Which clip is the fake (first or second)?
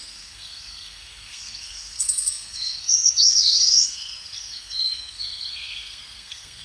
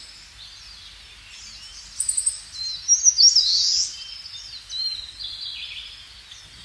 first